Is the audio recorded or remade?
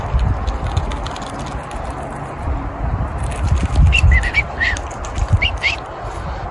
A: recorded